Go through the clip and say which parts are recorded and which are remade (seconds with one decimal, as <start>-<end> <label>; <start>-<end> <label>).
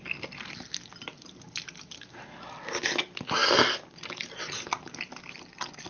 0.0-5.9 recorded